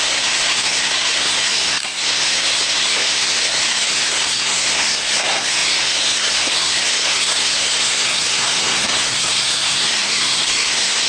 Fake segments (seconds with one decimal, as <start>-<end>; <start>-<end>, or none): 0.0-11.1